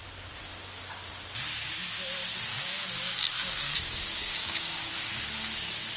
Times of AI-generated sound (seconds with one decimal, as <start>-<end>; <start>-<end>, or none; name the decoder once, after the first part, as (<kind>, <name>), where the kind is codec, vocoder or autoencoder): 2.5-4.8 (codec, DAC)